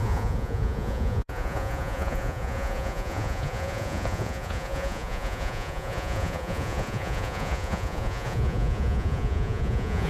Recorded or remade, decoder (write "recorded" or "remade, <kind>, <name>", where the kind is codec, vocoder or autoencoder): remade, vocoder, Vocos